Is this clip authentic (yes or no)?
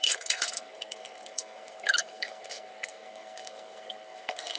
no